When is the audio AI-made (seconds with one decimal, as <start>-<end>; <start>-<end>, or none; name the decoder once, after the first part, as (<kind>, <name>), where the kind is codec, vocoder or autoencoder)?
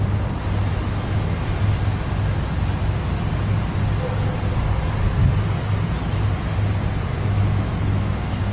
7.1-8.5 (autoencoder, DAC-VAE)